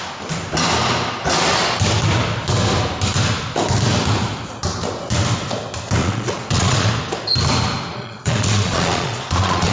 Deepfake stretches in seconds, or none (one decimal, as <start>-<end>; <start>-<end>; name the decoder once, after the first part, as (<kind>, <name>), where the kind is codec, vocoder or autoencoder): 6.0-6.9 (vocoder, Vocos); 7.9-9.7